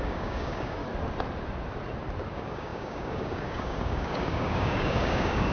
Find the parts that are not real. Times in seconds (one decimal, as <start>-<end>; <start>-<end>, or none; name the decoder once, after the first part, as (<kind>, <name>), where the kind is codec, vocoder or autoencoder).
0.0-0.8 (codec, DAC); 2.3-5.5